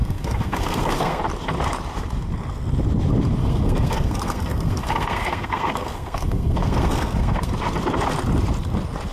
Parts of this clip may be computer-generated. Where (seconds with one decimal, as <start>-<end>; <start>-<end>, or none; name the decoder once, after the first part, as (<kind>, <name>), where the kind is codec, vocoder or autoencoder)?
0.0-1.2 (codec, SNAC); 3.4-7.5

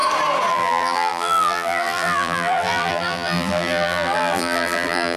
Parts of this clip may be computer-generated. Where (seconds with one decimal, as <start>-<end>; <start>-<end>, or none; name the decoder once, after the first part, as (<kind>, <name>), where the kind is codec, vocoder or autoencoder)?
0.5-5.2 (vocoder, BigVGAN v2)